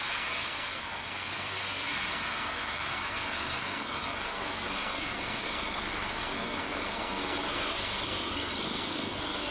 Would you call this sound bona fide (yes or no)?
no